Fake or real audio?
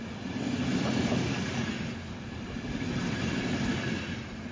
real